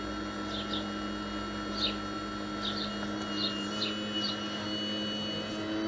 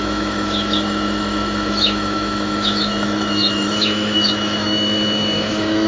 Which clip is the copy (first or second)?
second